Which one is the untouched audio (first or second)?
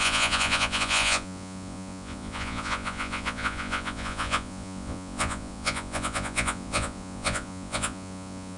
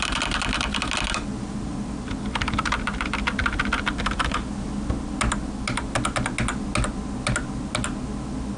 second